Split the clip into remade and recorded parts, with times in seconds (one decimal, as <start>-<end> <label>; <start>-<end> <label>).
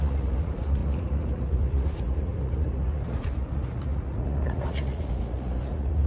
0.0-6.1 remade